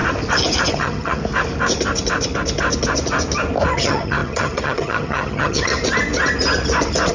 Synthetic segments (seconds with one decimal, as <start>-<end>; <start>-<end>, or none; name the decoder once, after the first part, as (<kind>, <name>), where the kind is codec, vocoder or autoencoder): 0.7-1.2 (vocoder, HiFi-GAN); 3.8-5.7